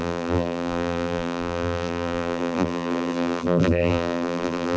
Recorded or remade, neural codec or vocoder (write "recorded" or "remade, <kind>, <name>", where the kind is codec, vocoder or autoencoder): remade, vocoder, BigVGAN v2